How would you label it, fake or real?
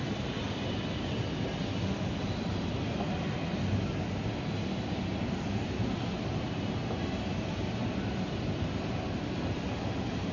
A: real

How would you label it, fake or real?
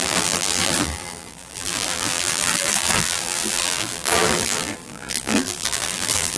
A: fake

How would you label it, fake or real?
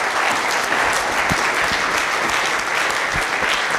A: real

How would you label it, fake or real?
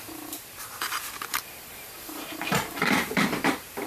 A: fake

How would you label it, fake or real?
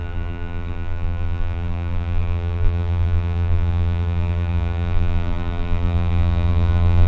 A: fake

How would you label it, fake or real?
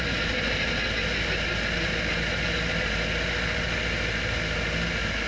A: real